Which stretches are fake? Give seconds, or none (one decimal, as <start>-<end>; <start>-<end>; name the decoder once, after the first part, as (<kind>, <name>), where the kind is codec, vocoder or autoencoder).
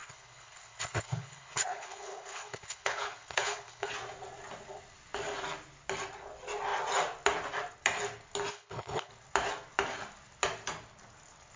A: 0.0-3.9 (codec, HILCodec); 8.5-9.1